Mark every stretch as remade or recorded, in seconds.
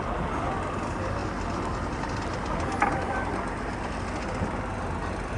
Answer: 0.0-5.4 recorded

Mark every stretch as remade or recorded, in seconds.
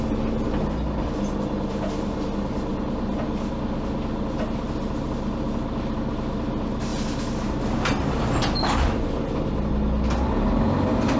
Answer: 0.0-11.2 recorded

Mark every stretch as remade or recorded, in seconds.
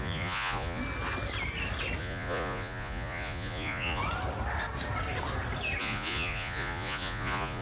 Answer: 0.0-0.8 remade; 0.8-2.0 recorded; 2.0-4.0 remade; 4.0-5.8 recorded; 5.8-7.6 remade